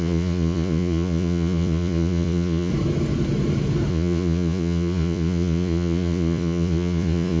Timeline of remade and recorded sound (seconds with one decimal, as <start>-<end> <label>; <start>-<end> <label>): 0.0-2.7 remade; 2.7-3.9 recorded; 3.9-7.4 remade